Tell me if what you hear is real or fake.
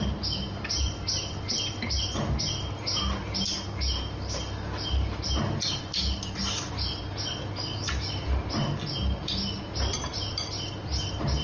real